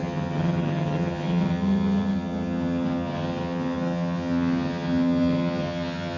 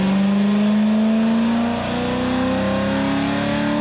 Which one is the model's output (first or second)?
first